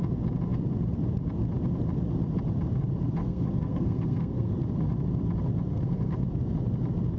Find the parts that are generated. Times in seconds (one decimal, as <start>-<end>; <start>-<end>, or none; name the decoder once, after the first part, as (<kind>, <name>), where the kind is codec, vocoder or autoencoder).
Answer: 3.2-4.5 (codec, SNAC); 5.7-6.2